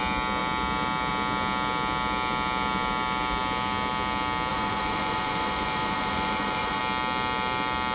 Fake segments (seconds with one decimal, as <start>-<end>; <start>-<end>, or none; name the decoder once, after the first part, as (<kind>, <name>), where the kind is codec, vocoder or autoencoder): 4.5-6.8 (vocoder, Vocos)